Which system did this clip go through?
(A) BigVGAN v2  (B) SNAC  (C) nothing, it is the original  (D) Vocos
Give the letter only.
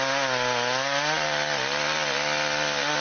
C